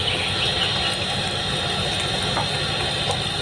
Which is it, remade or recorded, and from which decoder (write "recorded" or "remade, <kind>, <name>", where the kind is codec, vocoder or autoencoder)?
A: recorded